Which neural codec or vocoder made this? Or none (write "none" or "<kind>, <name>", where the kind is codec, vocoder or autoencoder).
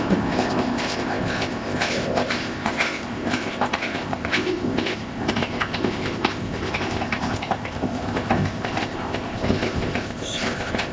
codec, ZipCodec